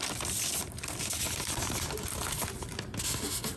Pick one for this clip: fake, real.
real